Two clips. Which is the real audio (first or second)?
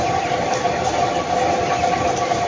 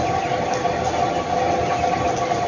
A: second